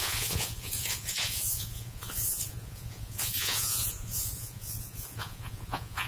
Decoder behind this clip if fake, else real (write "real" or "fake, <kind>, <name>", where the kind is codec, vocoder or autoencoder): fake, vocoder, Vocos